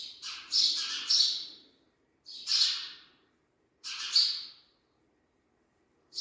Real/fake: fake